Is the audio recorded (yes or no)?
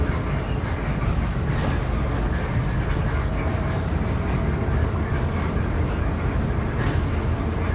yes